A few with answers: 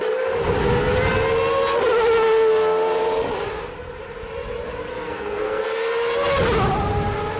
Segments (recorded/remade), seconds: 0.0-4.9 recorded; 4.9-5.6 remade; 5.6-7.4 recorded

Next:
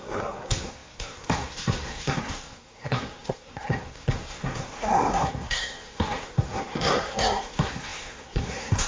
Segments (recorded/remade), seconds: 0.0-8.9 remade

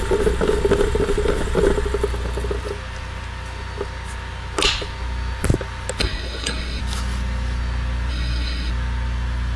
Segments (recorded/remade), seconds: 0.0-6.0 recorded; 6.0-6.8 remade; 6.8-8.1 recorded; 8.1-8.7 remade; 8.7-9.6 recorded